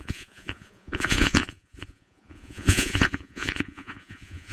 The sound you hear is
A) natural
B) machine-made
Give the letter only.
B